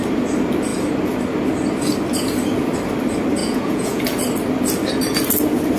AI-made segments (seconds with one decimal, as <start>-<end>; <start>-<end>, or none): 3.4-4.0